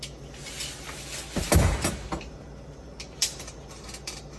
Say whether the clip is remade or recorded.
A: recorded